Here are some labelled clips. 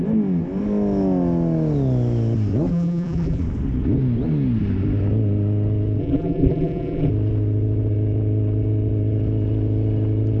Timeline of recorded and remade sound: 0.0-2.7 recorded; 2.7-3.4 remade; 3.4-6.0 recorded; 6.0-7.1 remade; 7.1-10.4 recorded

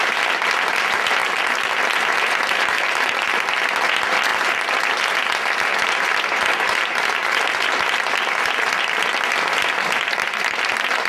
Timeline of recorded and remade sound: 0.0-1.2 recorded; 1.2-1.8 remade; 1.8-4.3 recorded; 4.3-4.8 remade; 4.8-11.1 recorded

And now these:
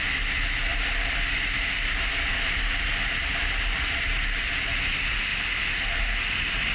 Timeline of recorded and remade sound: 0.0-5.3 remade; 5.3-6.2 recorded; 6.2-6.7 remade

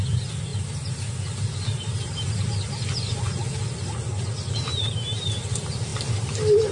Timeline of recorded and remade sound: 0.0-6.7 recorded

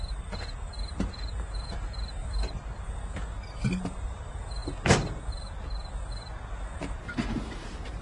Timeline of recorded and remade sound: 0.0-4.6 remade; 4.6-6.8 recorded; 6.8-8.0 remade

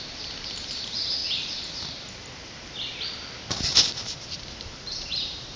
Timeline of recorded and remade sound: 0.0-1.2 remade; 1.2-4.6 recorded; 4.6-5.6 remade

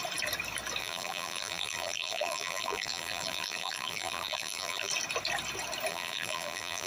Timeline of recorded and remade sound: 0.0-0.8 recorded; 0.8-4.9 remade; 4.9-5.9 recorded; 5.9-6.9 remade

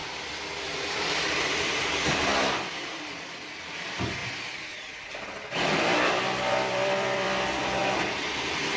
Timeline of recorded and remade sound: 0.0-4.2 remade; 4.2-6.1 recorded; 6.1-7.8 remade; 7.8-8.4 recorded; 8.4-8.8 remade